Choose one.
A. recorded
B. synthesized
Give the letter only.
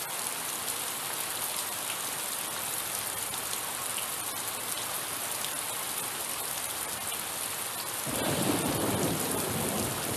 A